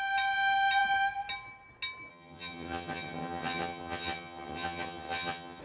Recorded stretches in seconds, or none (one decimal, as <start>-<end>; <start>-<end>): 0.0-2.1